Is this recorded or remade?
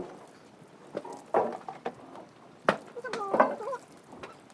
recorded